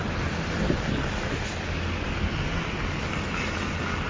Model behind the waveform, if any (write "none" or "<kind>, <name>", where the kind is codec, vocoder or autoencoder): none